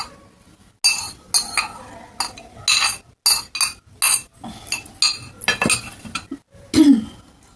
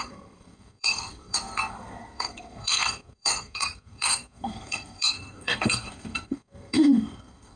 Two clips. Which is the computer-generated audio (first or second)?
second